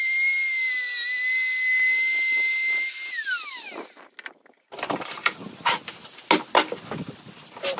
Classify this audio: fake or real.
real